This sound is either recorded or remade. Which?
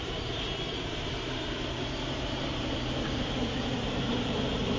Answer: remade